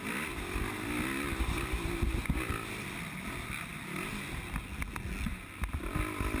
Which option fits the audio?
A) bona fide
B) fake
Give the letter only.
A